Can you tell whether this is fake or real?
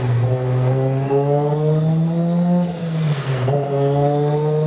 fake